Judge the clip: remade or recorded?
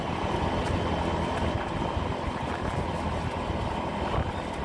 recorded